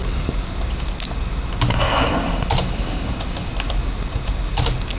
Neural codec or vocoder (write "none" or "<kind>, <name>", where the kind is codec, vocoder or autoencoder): none